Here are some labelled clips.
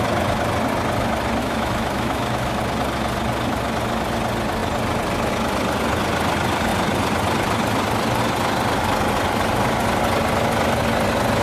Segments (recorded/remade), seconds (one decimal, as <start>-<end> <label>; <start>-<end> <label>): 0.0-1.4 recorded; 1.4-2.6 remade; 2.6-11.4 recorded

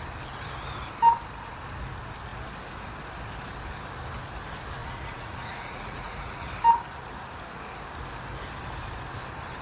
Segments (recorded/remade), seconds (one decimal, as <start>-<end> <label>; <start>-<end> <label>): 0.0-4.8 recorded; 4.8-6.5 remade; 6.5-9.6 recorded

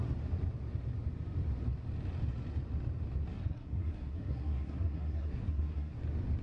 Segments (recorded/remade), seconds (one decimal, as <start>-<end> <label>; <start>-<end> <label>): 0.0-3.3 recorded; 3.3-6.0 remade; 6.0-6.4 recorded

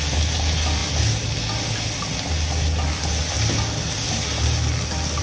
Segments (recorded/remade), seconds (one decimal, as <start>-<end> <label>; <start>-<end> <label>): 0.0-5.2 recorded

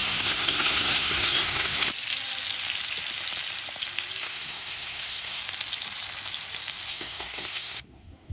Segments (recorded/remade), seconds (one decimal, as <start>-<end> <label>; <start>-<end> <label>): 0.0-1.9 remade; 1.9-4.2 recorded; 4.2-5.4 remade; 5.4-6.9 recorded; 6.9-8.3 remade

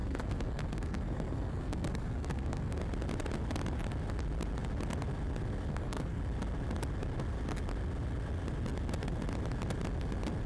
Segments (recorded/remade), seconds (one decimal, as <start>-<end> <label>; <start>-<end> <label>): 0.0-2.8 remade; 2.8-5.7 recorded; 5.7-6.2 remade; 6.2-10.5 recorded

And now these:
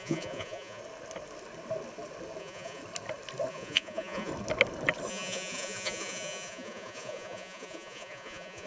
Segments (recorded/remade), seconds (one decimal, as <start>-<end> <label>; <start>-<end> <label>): 0.0-0.8 remade; 0.8-2.4 recorded; 2.4-2.8 remade; 2.8-3.5 recorded; 3.5-4.3 remade; 4.3-5.1 recorded; 5.1-8.7 remade